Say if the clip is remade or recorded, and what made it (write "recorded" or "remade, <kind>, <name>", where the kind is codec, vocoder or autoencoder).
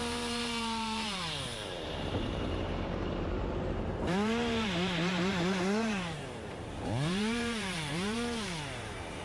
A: remade, vocoder, BigVGAN v2